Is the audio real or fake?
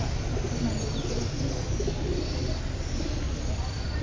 real